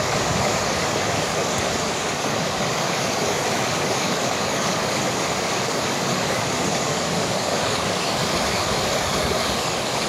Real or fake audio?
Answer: fake